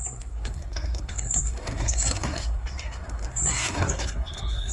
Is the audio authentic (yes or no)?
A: no